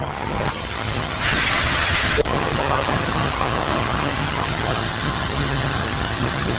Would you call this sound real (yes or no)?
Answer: no